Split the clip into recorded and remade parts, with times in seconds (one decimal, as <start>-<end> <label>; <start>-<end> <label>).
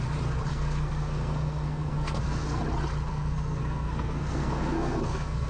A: 0.0-0.5 recorded; 0.5-2.6 remade; 2.6-3.1 recorded; 3.1-5.5 remade